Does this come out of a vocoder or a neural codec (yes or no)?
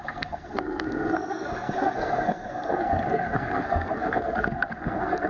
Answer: yes